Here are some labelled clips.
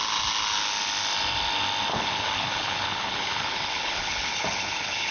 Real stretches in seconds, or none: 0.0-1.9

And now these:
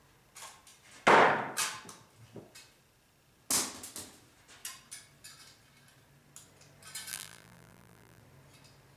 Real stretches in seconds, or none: 0.0-7.1; 8.2-9.0